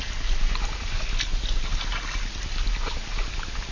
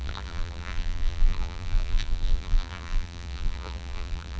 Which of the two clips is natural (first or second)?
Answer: first